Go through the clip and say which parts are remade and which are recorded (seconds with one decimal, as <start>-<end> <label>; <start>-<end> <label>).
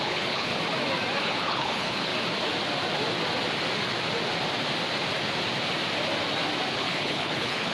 0.0-0.5 remade; 0.5-1.2 recorded; 1.2-2.1 remade; 2.1-6.7 recorded; 6.7-7.7 remade